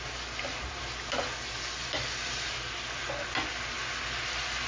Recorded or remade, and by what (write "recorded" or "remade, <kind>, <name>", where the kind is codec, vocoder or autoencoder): recorded